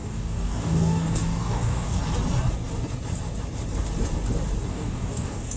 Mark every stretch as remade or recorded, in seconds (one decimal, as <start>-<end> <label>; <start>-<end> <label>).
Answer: 0.0-2.0 remade; 2.0-4.7 recorded; 4.7-5.6 remade